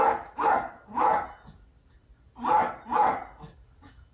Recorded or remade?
recorded